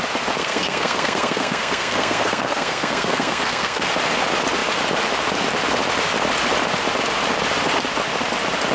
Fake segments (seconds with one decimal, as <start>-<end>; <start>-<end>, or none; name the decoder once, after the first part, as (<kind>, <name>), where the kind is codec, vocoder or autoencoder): 0.4-3.9 (codec, SNAC)